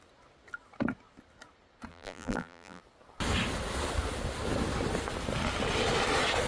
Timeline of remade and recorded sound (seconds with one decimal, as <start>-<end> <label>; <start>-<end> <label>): 0.0-1.9 recorded; 1.9-2.8 remade; 2.8-6.5 recorded